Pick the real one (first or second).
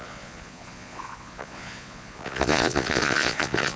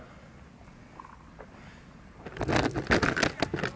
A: second